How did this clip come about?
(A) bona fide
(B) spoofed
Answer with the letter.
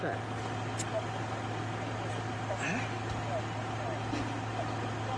A